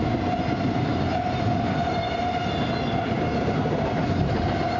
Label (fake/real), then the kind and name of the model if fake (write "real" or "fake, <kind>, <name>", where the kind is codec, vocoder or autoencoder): real